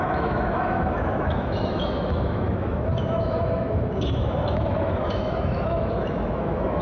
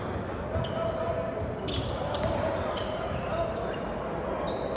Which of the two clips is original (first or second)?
second